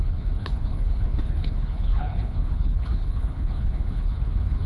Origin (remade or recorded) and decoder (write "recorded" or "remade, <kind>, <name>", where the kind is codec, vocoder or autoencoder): remade, codec, HILCodec